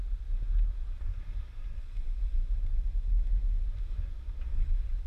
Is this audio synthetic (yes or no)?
no